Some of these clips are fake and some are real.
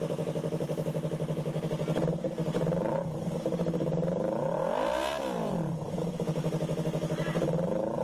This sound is real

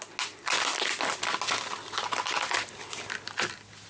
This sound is real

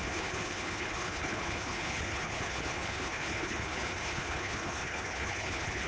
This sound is fake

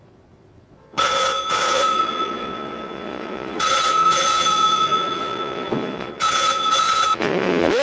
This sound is fake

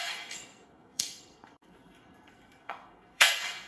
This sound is fake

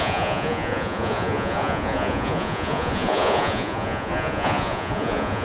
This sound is fake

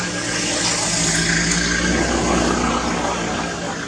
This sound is real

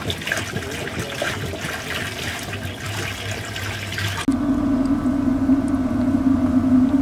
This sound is real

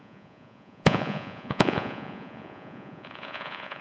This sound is fake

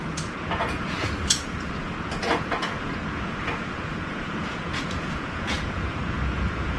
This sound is fake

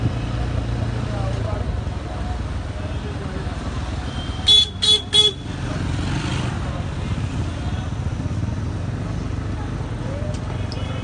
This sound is real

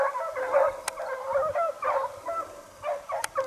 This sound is real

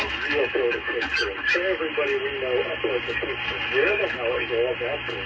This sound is real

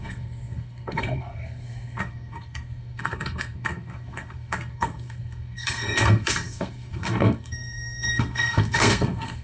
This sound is fake